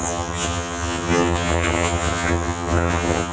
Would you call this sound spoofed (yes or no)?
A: yes